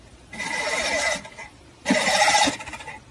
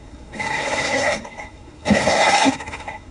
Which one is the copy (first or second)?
second